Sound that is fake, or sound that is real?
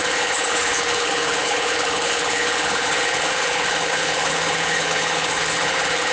fake